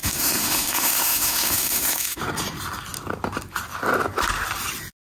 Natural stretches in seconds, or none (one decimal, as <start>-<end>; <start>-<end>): 2.2-5.1